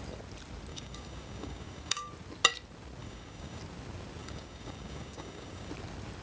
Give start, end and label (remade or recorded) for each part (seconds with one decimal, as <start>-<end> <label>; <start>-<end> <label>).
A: 0.0-0.7 recorded; 0.7-2.1 remade; 2.1-3.0 recorded; 3.0-3.6 remade; 3.6-4.2 recorded; 4.2-5.7 remade; 5.7-6.2 recorded